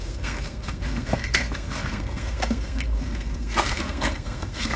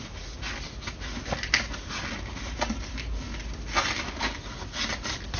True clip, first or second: second